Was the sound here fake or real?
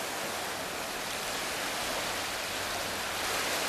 real